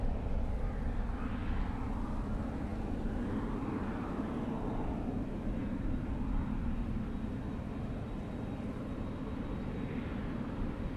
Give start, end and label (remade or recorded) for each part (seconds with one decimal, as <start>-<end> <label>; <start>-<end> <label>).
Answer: 0.0-5.6 recorded; 5.6-8.1 remade; 8.1-11.0 recorded